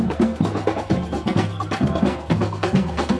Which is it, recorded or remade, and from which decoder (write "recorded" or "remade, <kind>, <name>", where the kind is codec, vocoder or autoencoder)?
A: remade, codec, SNAC